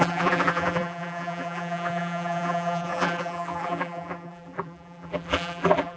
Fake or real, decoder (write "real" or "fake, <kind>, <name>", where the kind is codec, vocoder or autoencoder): fake, vocoder, BigVGAN v2